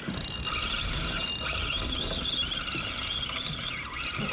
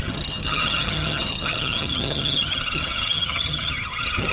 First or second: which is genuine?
first